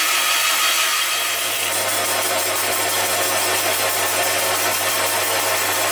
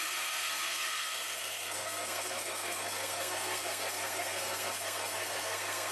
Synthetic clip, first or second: second